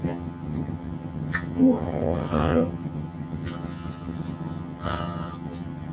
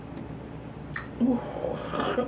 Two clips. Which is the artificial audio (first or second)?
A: first